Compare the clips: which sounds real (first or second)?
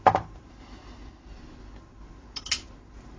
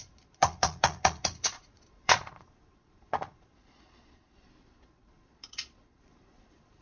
first